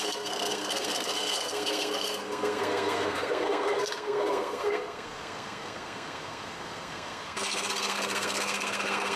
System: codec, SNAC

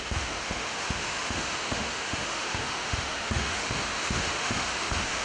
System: autoencoder, DAC-VAE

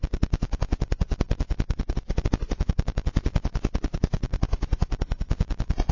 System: none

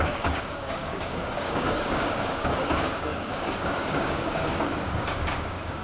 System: codec, DAC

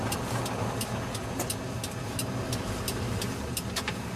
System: none